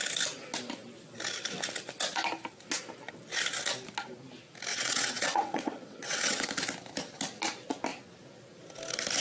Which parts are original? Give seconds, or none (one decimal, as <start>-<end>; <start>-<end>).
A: 0.0-4.7; 6.5-9.2